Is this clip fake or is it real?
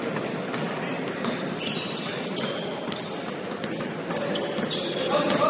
real